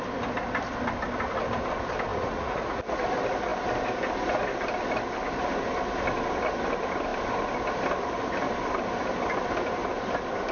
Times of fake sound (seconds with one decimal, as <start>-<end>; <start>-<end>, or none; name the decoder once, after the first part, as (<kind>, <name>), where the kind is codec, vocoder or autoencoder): 2.1-3.0 (vocoder, Vocos)